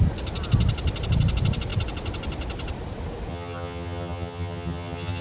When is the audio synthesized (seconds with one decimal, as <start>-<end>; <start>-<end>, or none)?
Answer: 3.3-5.2

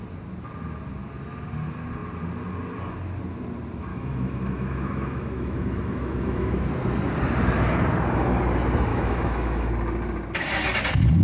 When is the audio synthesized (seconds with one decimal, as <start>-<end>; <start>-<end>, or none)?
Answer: 3.9-6.5; 8.9-9.7